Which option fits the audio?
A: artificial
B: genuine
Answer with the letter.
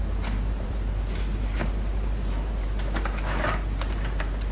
A